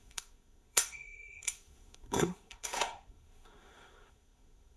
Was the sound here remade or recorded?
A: remade